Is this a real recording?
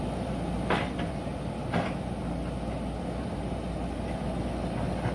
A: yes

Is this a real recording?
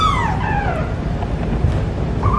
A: no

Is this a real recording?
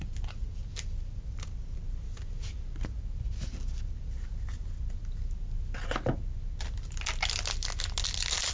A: yes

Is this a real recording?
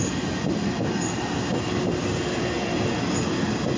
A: yes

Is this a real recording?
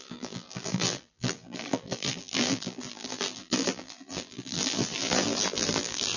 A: no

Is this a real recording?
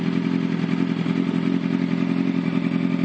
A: yes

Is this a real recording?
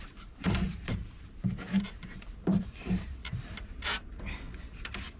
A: no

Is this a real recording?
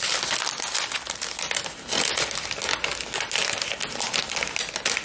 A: yes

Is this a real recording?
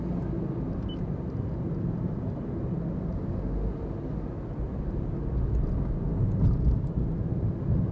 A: yes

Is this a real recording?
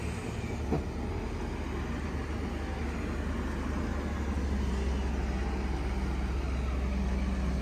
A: yes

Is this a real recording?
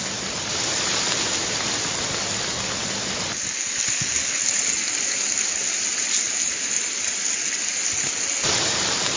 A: yes